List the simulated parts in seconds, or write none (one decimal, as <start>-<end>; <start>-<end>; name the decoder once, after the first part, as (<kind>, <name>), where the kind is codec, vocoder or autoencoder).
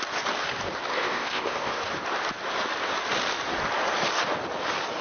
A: 0.9-1.8 (codec, ZipCodec)